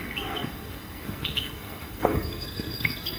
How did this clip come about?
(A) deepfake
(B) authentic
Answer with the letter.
A